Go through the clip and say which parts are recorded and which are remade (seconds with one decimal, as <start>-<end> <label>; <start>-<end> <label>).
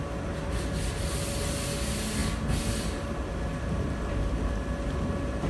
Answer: 0.0-5.5 recorded